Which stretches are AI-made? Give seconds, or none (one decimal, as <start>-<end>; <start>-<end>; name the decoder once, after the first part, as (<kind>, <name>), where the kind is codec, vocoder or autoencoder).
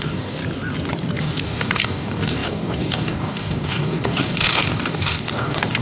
0.0-0.4 (codec, DAC); 1.2-5.8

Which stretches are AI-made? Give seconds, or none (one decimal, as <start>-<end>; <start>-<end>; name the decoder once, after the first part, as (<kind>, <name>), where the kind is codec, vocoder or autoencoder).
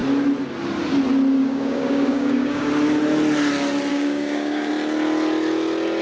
1.4-2.7 (codec, DAC); 3.9-4.7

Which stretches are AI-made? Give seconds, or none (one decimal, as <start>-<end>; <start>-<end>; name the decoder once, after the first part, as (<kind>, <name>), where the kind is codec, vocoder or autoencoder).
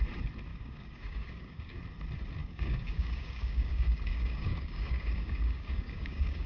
0.5-1.8 (codec, DAC); 2.4-6.5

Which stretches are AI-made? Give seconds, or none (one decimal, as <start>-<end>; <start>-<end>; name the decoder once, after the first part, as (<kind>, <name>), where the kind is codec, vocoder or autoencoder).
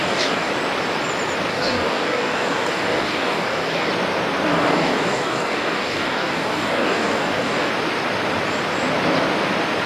0.0-0.5 (codec, DAC); 1.5-3.9; 4.5-7.7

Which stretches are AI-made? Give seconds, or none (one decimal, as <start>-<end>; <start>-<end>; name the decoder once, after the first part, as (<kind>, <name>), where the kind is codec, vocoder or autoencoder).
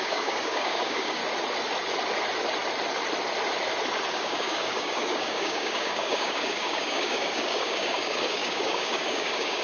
0.0-1.2 (codec, DAC); 4.1-9.6